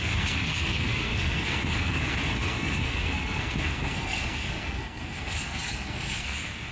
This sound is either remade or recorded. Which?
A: remade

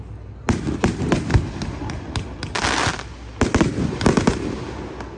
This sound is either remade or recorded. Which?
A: recorded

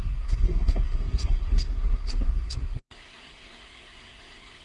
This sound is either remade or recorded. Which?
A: remade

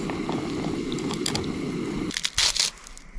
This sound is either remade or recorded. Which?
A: recorded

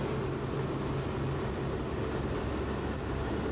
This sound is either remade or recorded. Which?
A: recorded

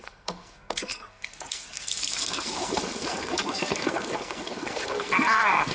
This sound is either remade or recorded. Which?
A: remade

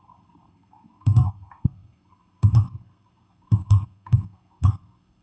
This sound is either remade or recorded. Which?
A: remade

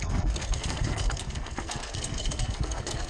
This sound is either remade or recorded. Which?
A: remade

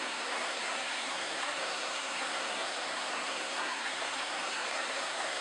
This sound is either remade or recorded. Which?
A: remade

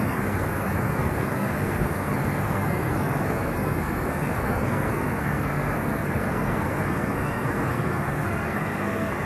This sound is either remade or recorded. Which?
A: remade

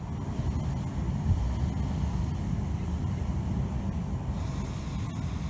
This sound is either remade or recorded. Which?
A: recorded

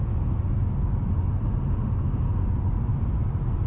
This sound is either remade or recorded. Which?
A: recorded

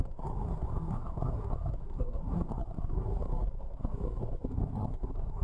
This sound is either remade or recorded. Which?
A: remade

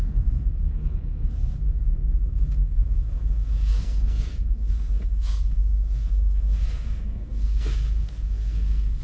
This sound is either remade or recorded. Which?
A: remade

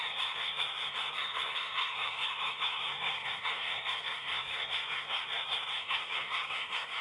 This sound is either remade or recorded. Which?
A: remade